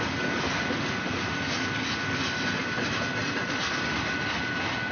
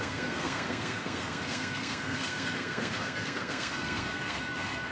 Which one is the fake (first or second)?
second